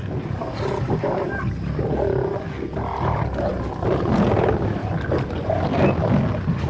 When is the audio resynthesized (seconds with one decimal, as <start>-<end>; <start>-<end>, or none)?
none